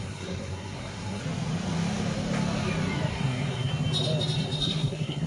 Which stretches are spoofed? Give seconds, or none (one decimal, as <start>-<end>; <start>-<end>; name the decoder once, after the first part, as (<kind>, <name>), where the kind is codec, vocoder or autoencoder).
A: 0.0-1.2 (codec, SNAC); 3.1-3.7; 4.6-5.3